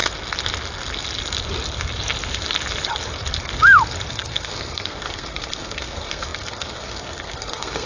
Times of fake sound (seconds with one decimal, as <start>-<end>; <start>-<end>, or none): 4.1-7.9